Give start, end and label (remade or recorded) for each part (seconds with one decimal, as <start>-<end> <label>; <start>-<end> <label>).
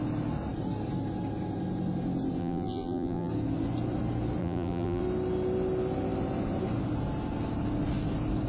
0.0-2.4 recorded; 2.4-3.3 remade; 3.3-4.4 recorded; 4.4-5.0 remade; 5.0-8.5 recorded